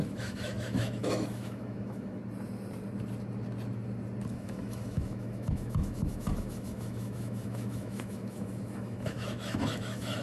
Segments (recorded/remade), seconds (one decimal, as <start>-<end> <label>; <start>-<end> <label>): 0.0-2.2 remade; 2.2-4.3 recorded; 4.3-10.2 remade

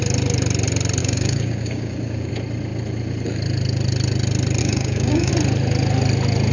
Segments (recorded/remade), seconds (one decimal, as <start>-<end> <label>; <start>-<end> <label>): 0.0-1.0 recorded; 1.0-2.3 remade; 2.3-4.6 recorded; 4.6-5.3 remade; 5.3-6.5 recorded

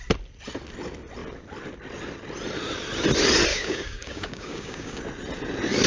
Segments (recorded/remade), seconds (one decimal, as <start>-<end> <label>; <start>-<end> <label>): 0.0-3.5 recorded; 3.5-5.0 remade; 5.0-5.9 recorded

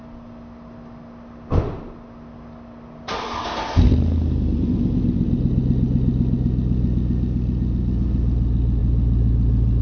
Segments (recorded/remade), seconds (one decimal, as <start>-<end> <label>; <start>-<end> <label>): 0.0-9.8 recorded

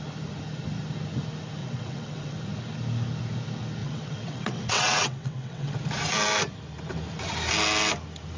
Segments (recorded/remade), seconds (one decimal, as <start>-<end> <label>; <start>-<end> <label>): 0.0-1.6 recorded; 1.6-2.4 remade; 2.4-3.8 recorded; 3.8-5.7 remade; 5.7-8.4 recorded

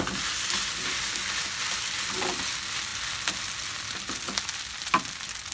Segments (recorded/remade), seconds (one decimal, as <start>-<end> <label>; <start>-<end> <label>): 0.0-5.5 recorded

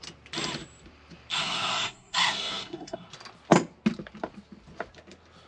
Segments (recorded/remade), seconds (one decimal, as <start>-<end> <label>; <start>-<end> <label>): 0.0-1.3 recorded; 1.3-3.1 remade; 3.1-5.5 recorded

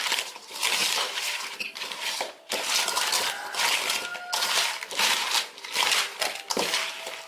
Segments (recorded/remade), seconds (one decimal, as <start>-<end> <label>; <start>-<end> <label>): 0.0-0.8 recorded; 0.8-1.7 remade; 1.7-7.3 recorded